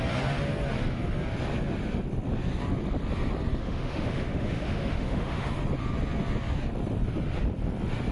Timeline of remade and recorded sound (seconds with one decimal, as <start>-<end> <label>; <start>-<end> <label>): 0.0-3.6 recorded; 3.6-5.5 remade; 5.5-8.1 recorded